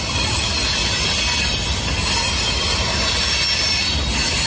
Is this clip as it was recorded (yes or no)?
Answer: yes